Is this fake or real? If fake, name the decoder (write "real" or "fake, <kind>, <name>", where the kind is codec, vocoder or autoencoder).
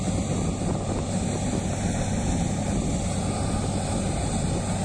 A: real